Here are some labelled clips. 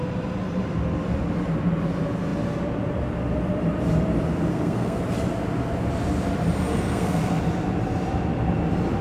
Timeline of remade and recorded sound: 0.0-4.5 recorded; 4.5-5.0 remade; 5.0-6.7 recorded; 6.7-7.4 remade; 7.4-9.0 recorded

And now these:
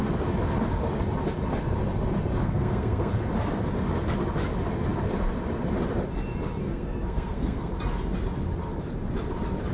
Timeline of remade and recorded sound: 0.0-2.4 recorded; 2.4-3.1 remade; 3.1-6.6 recorded; 6.6-7.7 remade; 7.7-9.7 recorded

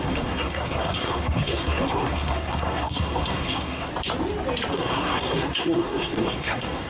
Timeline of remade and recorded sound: 0.0-3.9 remade; 3.9-4.7 recorded; 4.7-6.9 remade

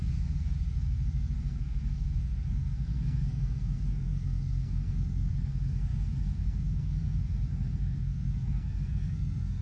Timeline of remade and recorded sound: 0.0-9.6 remade

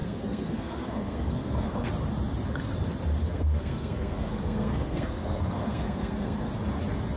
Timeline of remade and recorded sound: 0.0-1.9 remade; 1.9-3.2 recorded; 3.2-6.5 remade; 6.5-7.2 recorded

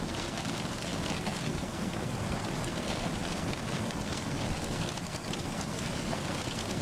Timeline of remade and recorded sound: 0.0-6.8 remade